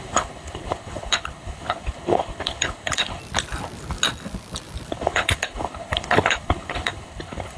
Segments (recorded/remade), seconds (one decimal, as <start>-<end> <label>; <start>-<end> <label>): 0.0-3.2 remade; 3.2-4.9 recorded; 4.9-7.6 remade